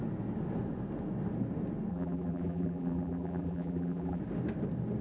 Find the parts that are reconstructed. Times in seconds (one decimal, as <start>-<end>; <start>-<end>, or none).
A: 1.9-4.2